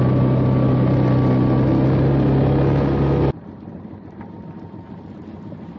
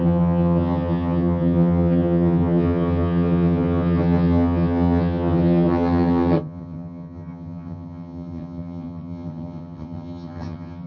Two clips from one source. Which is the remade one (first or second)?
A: second